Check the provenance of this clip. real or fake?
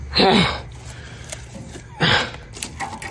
real